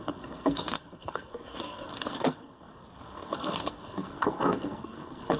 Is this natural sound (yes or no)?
no